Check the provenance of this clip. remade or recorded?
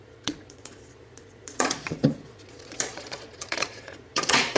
remade